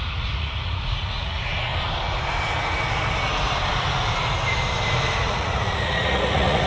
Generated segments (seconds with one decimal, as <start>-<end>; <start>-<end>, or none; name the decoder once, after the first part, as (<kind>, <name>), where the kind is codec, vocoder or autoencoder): 0.0-1.7 (vocoder, Vocos); 5.1-6.7